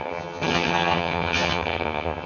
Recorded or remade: remade